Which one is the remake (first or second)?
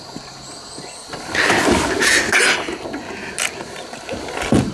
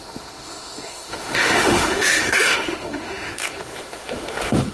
second